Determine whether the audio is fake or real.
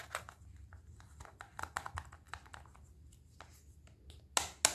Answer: real